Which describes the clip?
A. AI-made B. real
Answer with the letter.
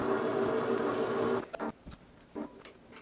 B